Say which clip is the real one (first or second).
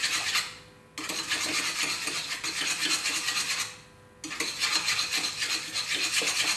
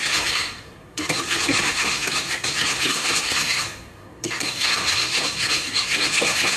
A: first